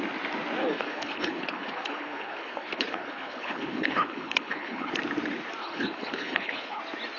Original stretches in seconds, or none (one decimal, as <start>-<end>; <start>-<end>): 0.0-0.6; 4.9-5.6; 6.8-7.2